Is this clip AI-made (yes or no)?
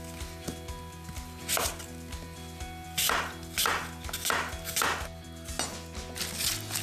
no